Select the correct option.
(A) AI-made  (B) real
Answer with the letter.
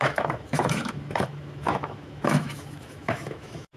A